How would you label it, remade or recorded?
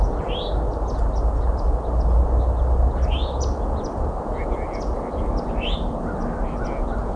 recorded